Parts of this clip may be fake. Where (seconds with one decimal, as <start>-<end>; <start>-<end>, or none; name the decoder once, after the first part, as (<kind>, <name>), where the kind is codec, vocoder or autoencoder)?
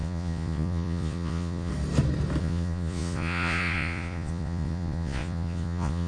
0.0-1.7 (vocoder, Vocos); 2.4-6.1